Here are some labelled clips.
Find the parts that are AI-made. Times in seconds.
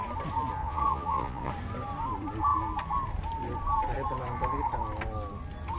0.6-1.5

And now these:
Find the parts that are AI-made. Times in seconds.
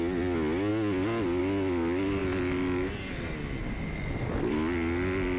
none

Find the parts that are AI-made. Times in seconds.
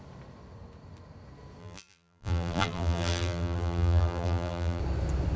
1.6-4.8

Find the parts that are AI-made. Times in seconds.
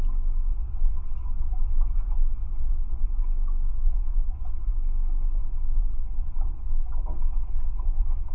0.5-3.2; 3.7-4.7; 5.4-8.3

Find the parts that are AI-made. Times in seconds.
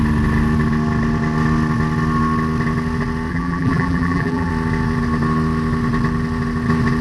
3.3-4.5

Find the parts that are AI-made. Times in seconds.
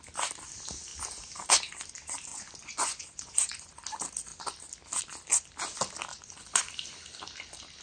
2.3-3.7; 6.1-6.6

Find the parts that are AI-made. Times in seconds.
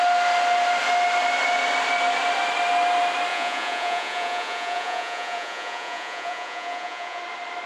3.3-7.2